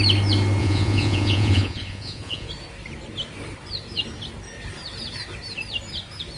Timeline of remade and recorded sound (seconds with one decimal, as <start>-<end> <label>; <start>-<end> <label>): 0.0-0.6 recorded; 0.6-2.5 remade; 2.5-6.4 recorded